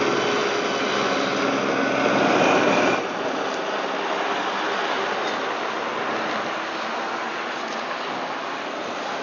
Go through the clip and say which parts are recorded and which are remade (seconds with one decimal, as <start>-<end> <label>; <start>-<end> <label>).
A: 0.0-9.2 recorded